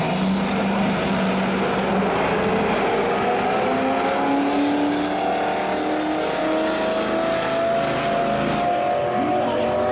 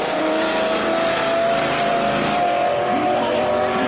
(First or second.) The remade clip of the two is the second